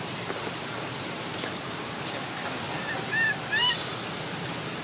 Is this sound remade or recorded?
remade